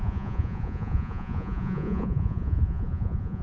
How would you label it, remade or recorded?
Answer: remade